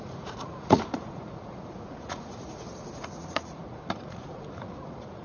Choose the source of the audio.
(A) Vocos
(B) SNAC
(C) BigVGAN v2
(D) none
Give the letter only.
A